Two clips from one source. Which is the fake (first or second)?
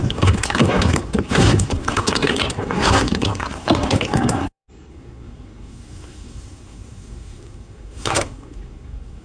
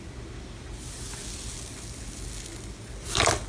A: first